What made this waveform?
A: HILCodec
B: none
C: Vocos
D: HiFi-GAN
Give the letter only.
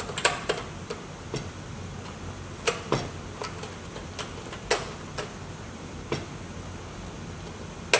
B